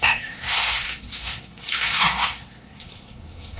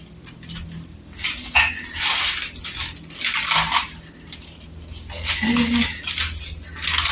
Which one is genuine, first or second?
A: second